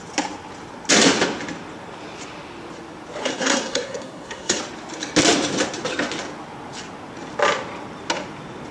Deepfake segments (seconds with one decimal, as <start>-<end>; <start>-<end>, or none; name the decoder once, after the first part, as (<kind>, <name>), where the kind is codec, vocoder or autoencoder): 3.2-4.6 (codec, SNAC)